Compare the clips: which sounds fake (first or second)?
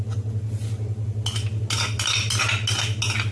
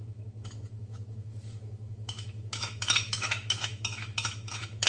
second